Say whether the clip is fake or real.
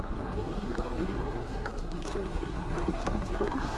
fake